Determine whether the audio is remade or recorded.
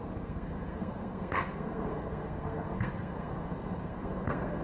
remade